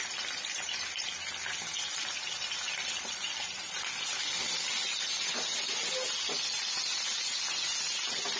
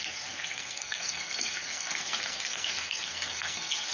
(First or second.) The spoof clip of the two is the second